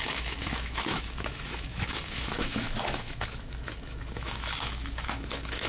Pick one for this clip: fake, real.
fake